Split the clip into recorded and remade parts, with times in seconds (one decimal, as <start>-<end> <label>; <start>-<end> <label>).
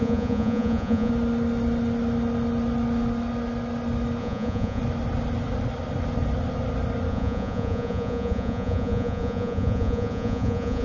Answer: 0.0-1.1 remade; 1.1-4.2 recorded; 4.2-4.8 remade; 4.8-7.1 recorded; 7.1-10.8 remade